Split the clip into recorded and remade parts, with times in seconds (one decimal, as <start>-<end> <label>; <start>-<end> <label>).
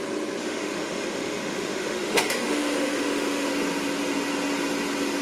0.0-0.4 recorded; 0.4-3.5 remade; 3.5-5.2 recorded